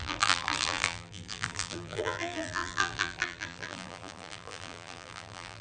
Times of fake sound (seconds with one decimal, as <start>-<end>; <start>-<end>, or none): 0.0-5.6